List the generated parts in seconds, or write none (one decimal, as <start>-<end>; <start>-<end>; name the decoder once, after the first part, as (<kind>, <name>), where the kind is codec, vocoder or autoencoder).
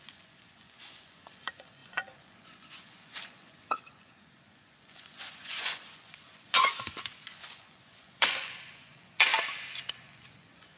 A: 0.0-9.3 (vocoder, Vocos); 9.9-10.8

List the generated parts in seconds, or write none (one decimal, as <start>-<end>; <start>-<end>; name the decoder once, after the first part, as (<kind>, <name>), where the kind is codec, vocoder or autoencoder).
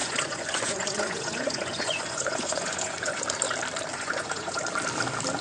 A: 0.0-3.2 (vocoder, Vocos); 3.9-4.6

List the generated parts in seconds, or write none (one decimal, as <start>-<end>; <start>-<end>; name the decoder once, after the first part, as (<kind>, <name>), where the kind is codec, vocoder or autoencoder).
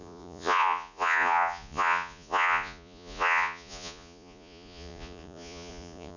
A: 0.0-6.2 (vocoder, Vocos)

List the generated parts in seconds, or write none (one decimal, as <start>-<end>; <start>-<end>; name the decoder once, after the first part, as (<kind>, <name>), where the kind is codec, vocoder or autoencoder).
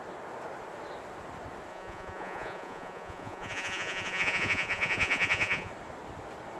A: 1.7-5.7 (vocoder, Vocos)